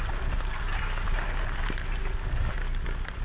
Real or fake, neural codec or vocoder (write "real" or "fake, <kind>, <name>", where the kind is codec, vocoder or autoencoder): real